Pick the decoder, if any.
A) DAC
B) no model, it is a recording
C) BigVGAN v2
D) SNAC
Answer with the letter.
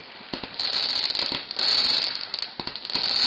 B